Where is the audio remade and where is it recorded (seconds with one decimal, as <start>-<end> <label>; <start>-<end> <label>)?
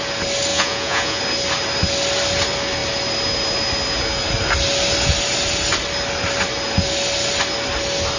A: 0.0-0.5 recorded; 0.5-1.2 remade; 1.2-8.2 recorded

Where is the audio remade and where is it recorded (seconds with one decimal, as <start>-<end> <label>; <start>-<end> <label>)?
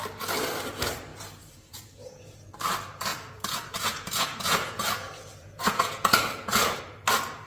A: 0.0-1.1 recorded; 1.1-2.5 remade; 2.5-3.1 recorded; 3.1-6.8 remade; 6.8-7.5 recorded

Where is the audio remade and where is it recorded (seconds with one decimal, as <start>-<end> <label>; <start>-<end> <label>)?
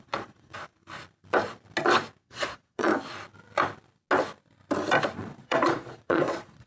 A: 0.0-0.5 remade; 0.5-2.2 recorded; 2.2-2.9 remade; 2.9-5.2 recorded; 5.2-6.7 remade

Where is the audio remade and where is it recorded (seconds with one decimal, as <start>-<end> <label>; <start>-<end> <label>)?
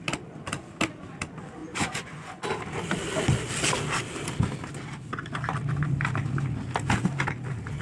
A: 0.0-1.6 recorded; 1.6-2.4 remade; 2.4-7.8 recorded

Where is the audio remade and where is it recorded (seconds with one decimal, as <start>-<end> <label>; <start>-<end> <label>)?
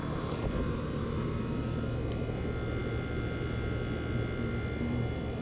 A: 0.0-5.4 recorded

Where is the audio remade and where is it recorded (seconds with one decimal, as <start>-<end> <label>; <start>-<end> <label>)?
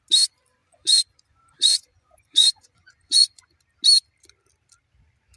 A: 0.0-0.6 recorded; 0.6-3.6 remade; 3.6-5.4 recorded